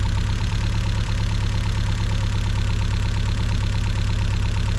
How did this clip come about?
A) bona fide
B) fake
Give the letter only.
A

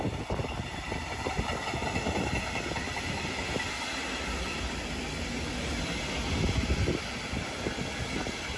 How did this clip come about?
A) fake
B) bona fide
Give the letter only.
B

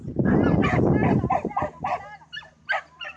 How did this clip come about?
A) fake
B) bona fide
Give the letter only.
B